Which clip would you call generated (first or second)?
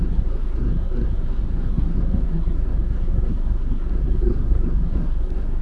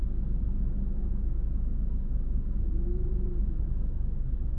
first